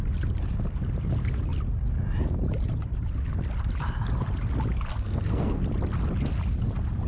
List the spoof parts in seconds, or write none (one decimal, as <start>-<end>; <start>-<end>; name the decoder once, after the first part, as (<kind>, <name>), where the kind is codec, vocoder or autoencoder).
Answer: 4.9-5.6 (codec, SNAC)